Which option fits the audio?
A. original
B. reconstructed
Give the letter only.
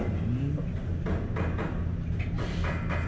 A